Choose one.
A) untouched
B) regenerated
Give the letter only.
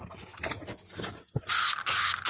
A